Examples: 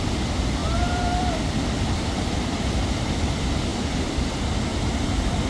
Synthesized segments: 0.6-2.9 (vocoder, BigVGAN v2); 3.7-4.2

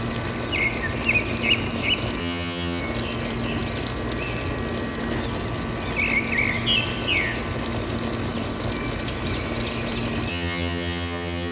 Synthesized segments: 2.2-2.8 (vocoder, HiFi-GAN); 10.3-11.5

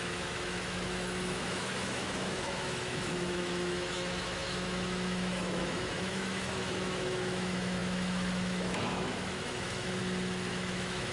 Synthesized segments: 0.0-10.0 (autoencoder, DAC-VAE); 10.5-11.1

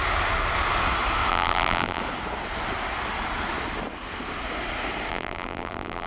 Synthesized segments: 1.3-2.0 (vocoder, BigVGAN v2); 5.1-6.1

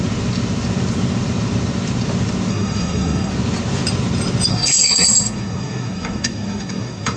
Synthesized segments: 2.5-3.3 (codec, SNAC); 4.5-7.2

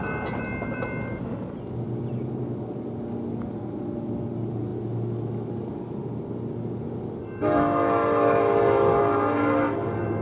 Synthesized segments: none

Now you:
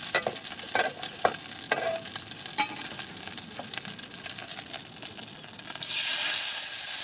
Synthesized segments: none